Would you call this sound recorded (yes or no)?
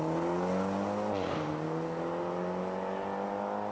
yes